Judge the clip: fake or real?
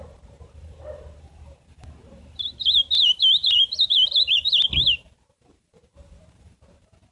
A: fake